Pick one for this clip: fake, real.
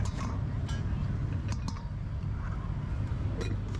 real